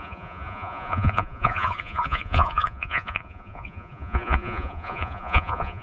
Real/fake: fake